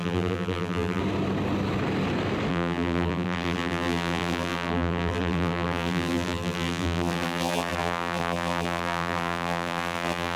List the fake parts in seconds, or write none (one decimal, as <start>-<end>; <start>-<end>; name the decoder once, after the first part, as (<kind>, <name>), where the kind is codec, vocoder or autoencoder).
0.0-1.0 (vocoder, BigVGAN v2); 2.5-10.4